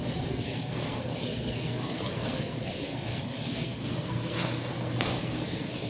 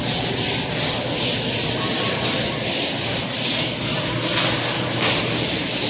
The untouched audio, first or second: second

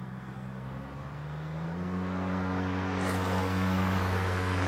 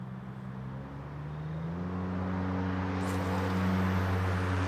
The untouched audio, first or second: second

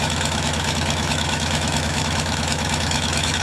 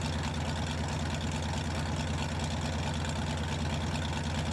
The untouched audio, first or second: second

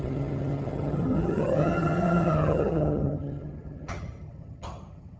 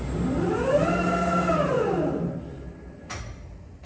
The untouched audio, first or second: second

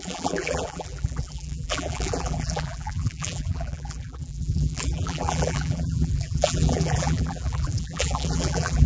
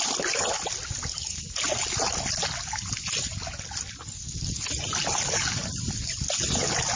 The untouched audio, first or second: second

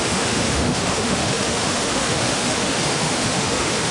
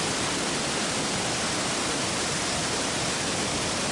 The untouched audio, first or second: second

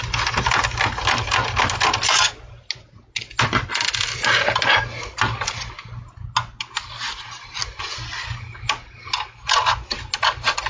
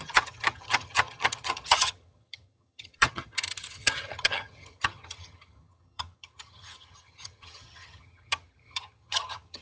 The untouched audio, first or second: first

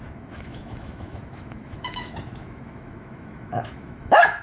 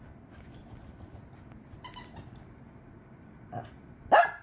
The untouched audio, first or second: second